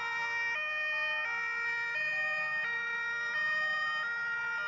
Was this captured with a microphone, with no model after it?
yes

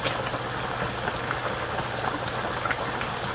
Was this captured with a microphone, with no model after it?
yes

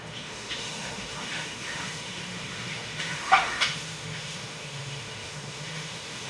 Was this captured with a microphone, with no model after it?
no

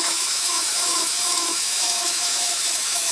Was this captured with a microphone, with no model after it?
no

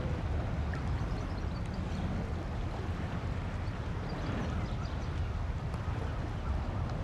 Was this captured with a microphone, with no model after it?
yes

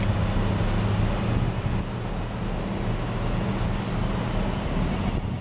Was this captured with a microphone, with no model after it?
yes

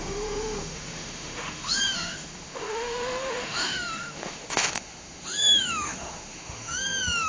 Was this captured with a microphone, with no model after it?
no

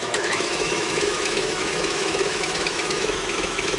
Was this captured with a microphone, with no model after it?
no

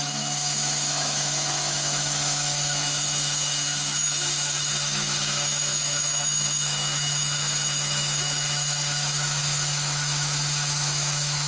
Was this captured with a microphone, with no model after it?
no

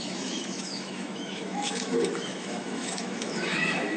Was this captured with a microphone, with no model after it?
no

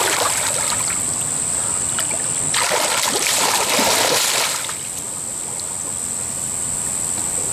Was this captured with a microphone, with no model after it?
yes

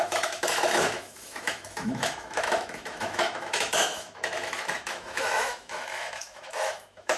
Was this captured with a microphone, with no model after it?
no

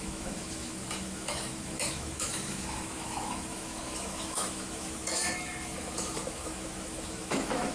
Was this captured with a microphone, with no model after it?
no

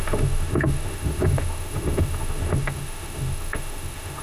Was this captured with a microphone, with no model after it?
no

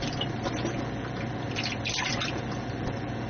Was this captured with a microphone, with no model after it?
yes